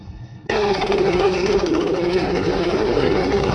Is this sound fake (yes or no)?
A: yes